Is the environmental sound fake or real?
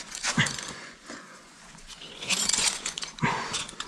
fake